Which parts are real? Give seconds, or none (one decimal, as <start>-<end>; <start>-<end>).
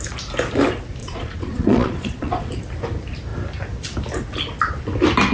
0.0-1.0; 2.5-5.3